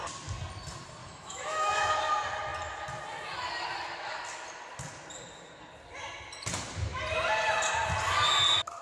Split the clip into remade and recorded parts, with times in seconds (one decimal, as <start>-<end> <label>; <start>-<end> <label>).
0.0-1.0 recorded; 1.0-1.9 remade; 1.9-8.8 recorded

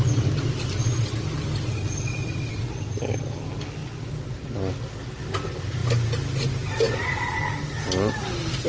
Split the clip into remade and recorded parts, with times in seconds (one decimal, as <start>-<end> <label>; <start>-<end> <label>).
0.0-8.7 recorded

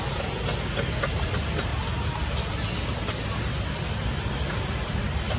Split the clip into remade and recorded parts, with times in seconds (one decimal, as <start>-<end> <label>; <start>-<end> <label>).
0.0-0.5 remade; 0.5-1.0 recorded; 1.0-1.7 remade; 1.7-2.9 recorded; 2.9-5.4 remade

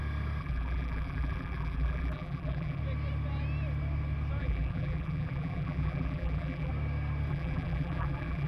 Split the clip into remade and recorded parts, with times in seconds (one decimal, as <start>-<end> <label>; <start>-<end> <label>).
0.0-0.4 recorded; 0.4-2.8 remade; 2.8-4.4 recorded; 4.4-6.7 remade; 6.7-7.3 recorded; 7.3-8.5 remade